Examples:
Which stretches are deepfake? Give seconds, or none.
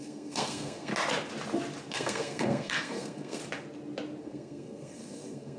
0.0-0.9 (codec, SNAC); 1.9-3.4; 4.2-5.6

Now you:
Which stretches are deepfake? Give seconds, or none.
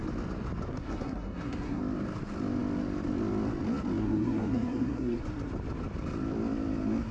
0.7-1.8 (codec, SNAC); 4.0-5.2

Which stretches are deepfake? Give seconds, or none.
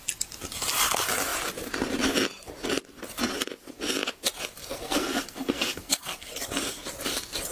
4.6-6.3 (codec, SNAC)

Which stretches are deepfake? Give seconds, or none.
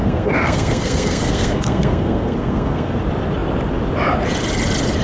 0.0-3.0 (codec, SNAC)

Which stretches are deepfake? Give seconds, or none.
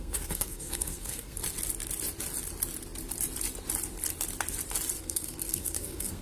0.0-1.4 (codec, SNAC); 5.0-6.2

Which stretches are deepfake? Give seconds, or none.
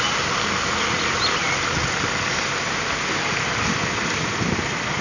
none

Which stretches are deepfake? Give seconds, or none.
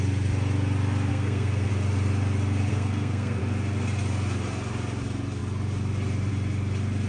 1.1-1.7 (codec, SNAC); 2.7-3.4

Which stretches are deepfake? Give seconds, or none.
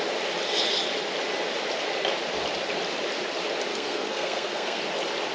3.7-4.8 (codec, SNAC)